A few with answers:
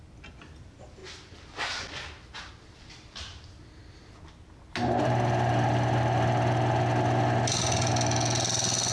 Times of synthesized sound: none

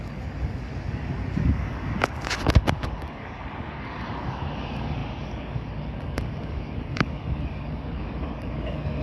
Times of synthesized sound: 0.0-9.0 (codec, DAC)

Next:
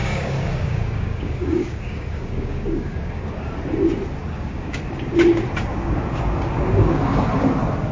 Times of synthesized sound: 0.0-3.5 (codec, DAC); 4.2-4.8; 5.7-7.2

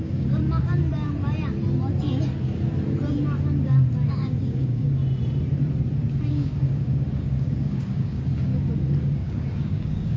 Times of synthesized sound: 0.0-0.4 (codec, DAC); 4.1-5.0; 6.3-8.5; 9.0-10.2

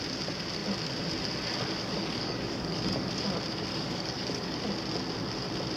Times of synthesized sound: 1.8-3.1 (codec, DAC); 3.7-4.6

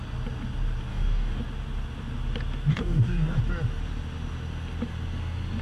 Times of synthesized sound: 0.9-1.4 (codec, DAC); 2.7-3.4